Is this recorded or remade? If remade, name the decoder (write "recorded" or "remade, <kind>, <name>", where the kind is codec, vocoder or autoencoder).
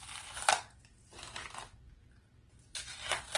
recorded